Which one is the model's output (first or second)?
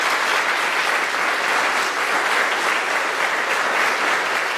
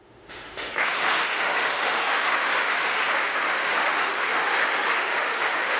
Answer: second